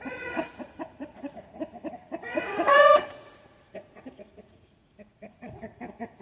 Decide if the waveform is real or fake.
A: fake